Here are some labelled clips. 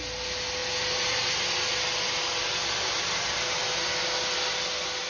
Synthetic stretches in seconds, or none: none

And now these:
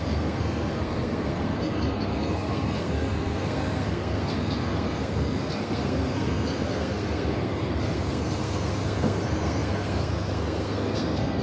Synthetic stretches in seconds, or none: 0.0-11.4

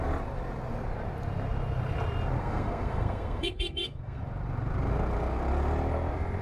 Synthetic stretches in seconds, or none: 2.4-4.2